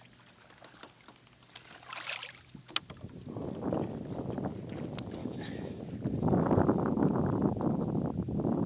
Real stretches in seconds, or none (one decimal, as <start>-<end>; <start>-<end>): 0.0-5.2; 5.8-8.7